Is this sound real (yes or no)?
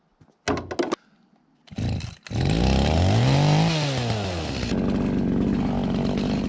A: yes